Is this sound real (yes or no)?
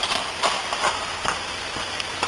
yes